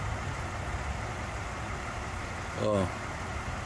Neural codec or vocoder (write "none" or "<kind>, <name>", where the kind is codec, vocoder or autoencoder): none